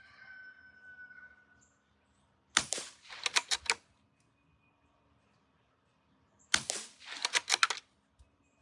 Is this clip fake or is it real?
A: real